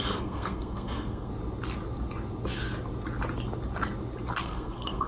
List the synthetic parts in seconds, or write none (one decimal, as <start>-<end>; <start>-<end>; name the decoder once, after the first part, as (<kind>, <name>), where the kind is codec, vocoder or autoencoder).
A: 0.0-1.3 (codec, SNAC); 4.4-5.1